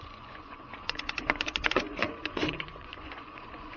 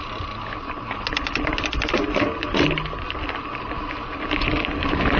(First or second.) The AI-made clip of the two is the first